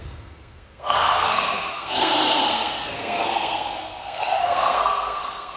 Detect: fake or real fake